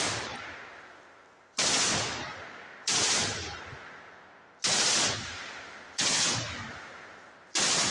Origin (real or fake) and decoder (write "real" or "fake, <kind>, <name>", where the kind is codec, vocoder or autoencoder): real